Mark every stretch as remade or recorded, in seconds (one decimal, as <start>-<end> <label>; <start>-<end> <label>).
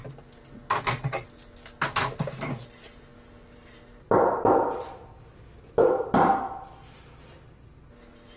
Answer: 0.0-8.4 recorded